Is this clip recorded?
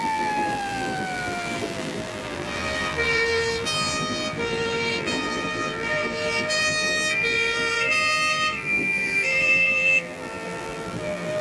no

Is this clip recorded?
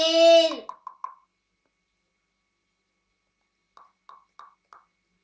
yes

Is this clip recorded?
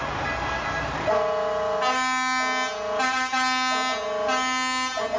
yes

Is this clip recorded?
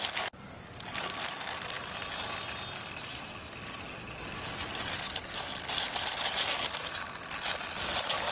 yes